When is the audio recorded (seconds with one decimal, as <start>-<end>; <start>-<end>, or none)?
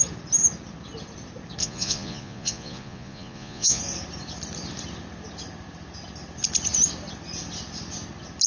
0.0-1.6; 3.8-8.5